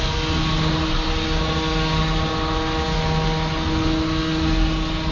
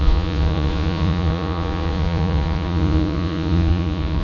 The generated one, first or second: second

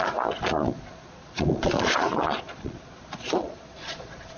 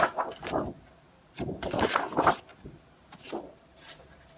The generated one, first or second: first